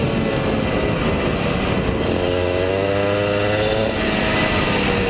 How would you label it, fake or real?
real